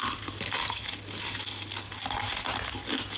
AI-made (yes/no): no